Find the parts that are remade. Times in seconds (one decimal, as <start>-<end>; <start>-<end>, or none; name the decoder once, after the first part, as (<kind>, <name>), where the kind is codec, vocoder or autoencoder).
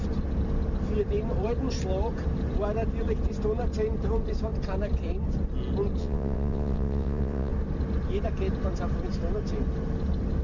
6.0-7.5 (vocoder, WaveNeXt)